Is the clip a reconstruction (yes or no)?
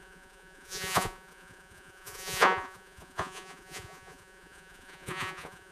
yes